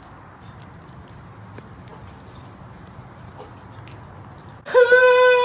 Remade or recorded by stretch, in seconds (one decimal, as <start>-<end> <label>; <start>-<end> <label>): 0.0-5.4 recorded